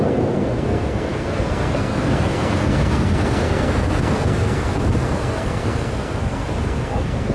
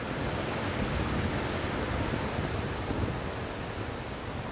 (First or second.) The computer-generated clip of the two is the first